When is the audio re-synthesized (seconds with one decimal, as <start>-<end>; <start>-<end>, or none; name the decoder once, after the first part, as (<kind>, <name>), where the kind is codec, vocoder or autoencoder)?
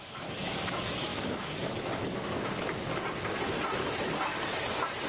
0.0-2.9 (autoencoder, DAC-VAE); 3.7-4.3